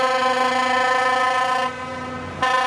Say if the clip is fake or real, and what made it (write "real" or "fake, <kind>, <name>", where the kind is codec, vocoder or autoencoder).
real